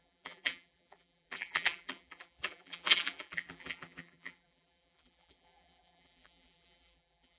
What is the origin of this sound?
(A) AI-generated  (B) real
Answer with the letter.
A